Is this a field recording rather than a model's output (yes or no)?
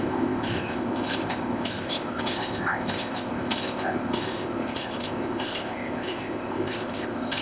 no